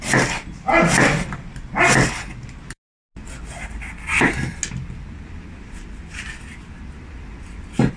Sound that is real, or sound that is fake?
real